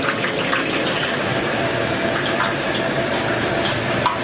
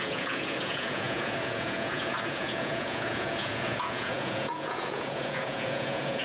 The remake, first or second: second